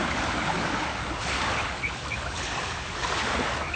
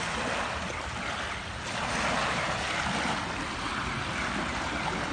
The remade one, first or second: first